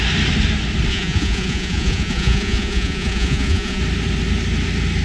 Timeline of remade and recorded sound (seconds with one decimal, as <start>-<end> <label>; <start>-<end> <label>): 0.0-0.9 recorded; 0.9-3.8 remade; 3.8-5.0 recorded

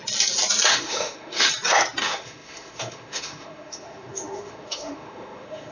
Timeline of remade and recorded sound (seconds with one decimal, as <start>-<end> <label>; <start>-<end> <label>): 0.0-0.7 recorded; 0.7-1.5 remade; 1.5-2.0 recorded; 2.0-5.7 remade

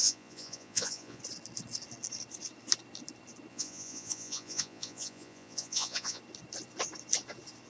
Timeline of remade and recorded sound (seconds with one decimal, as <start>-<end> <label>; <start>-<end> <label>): 0.0-1.2 remade; 1.2-3.5 recorded; 3.5-6.2 remade; 6.2-7.7 recorded

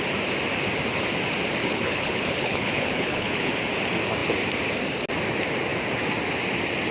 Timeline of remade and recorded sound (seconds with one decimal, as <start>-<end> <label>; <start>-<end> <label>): 0.0-1.6 recorded; 1.6-3.5 remade; 3.5-6.9 recorded

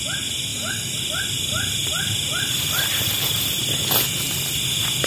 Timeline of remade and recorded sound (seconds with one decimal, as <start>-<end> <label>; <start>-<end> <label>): 0.0-0.5 recorded; 0.5-3.6 remade; 3.6-5.1 recorded